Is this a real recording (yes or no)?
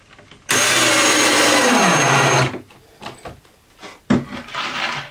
yes